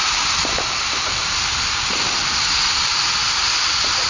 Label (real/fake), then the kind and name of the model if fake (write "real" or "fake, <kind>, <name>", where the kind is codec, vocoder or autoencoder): real